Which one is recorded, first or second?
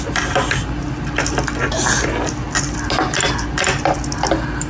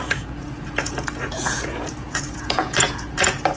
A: first